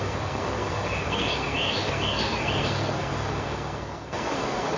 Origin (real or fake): fake